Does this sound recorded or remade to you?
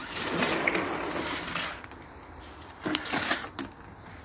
recorded